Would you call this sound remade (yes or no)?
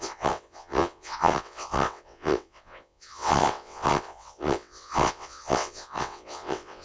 yes